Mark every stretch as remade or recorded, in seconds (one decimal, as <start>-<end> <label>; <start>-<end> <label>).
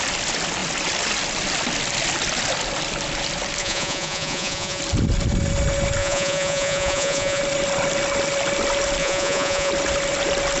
0.0-3.6 recorded; 3.6-4.8 remade; 4.8-6.0 recorded; 6.0-7.4 remade; 7.4-9.0 recorded; 9.0-9.7 remade; 9.7-10.6 recorded